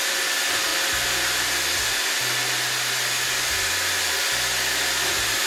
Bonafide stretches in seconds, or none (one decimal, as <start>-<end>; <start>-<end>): 0.0-5.5